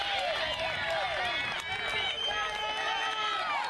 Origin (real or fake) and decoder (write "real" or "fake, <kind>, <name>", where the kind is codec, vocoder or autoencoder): real